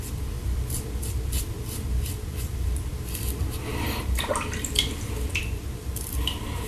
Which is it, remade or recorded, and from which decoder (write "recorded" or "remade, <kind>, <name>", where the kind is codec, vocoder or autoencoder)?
remade, vocoder, BigVGAN v2